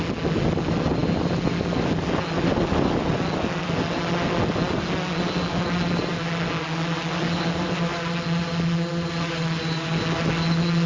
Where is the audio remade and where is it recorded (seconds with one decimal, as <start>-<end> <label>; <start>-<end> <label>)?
0.0-10.9 recorded